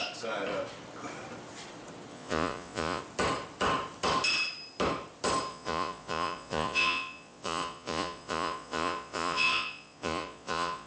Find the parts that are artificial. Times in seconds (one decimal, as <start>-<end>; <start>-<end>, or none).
2.1-3.0; 5.5-10.9